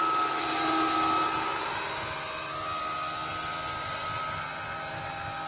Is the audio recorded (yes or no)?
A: yes